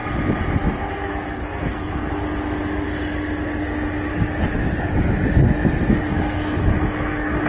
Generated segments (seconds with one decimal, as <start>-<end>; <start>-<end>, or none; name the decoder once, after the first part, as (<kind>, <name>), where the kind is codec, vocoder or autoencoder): 0.9-2.1 (codec, SNAC); 5.9-7.5